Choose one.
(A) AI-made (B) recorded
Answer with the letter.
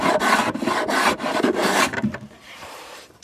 A